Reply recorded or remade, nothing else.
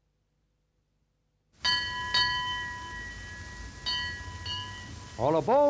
recorded